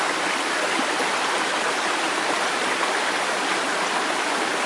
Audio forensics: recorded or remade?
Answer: recorded